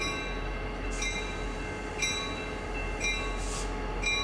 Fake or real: real